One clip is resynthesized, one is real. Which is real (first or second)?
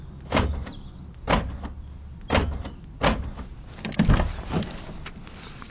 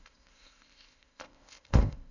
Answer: first